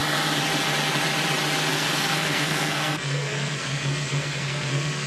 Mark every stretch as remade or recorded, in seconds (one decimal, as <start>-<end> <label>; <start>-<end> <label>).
0.0-1.7 recorded; 1.7-5.1 remade